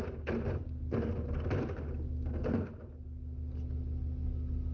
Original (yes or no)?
yes